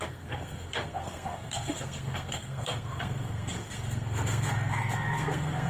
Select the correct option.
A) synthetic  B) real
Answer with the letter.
A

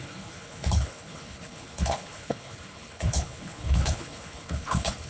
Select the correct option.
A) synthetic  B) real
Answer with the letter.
A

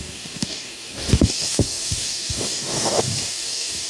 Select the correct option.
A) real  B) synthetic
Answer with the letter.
B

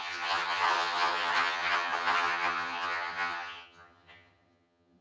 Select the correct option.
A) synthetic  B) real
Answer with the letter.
A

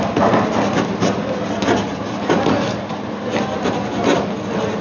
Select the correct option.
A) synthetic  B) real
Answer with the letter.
B